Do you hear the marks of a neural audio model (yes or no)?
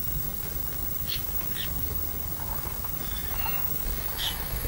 yes